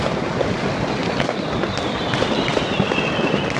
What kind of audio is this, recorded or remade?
recorded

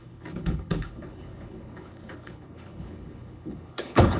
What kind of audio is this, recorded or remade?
remade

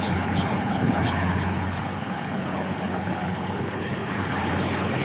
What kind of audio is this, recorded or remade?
remade